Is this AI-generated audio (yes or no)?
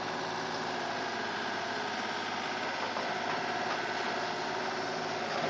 no